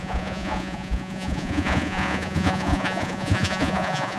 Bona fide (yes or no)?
no